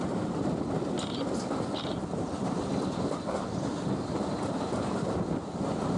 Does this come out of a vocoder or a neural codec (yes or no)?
no